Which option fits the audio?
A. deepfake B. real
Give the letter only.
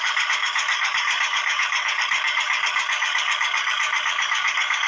A